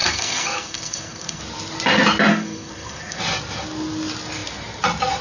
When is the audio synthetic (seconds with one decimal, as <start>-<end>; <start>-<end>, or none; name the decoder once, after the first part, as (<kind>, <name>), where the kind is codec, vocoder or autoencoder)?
0.0-1.4 (codec, SNAC); 2.3-3.2

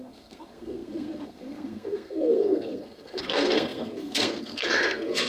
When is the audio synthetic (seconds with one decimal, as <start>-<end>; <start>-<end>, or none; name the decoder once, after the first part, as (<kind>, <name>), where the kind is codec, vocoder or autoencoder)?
0.0-5.3 (codec, SNAC)